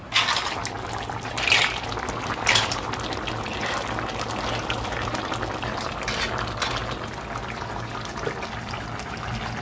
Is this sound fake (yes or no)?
no